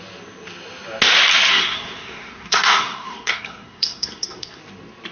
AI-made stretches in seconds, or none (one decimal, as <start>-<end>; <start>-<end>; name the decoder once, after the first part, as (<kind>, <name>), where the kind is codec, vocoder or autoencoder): 1.5-4.6 (codec, SNAC)